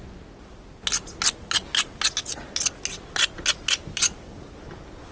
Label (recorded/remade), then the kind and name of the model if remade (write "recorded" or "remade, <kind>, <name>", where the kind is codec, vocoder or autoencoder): recorded